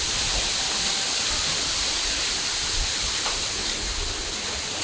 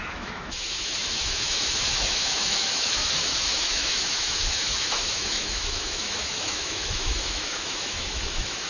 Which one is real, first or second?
first